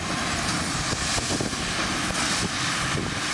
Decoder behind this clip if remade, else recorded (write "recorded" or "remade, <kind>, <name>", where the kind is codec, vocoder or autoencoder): recorded